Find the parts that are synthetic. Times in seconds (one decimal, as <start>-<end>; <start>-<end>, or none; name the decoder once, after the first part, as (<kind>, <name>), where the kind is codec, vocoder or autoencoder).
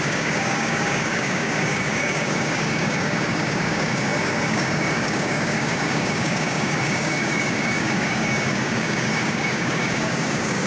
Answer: 0.0-10.7 (codec, DAC)